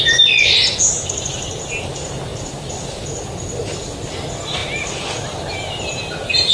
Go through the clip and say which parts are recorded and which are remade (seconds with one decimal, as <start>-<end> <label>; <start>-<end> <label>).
0.0-6.5 recorded